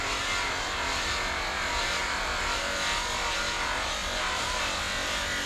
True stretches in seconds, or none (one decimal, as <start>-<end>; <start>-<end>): 0.0-2.0; 3.3-4.0

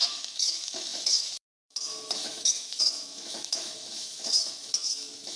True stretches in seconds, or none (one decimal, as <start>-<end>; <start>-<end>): none

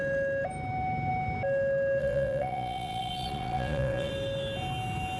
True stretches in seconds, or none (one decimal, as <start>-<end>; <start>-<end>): 0.0-2.0; 4.1-5.2

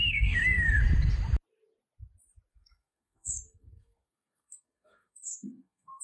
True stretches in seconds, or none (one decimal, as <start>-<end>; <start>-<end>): 0.8-2.5

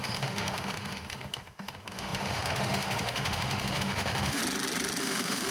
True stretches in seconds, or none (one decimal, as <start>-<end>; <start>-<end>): 4.4-5.0

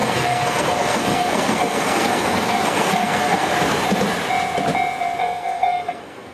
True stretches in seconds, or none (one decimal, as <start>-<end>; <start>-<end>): 3.5-5.2

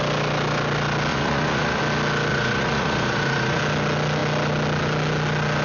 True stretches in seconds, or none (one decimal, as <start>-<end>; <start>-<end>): 0.0-1.1; 1.8-2.3; 3.6-5.6

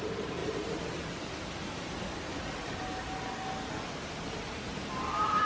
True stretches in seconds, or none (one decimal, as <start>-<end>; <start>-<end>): 0.0-5.5